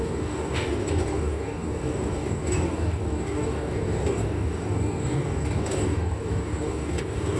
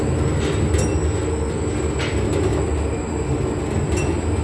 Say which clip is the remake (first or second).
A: first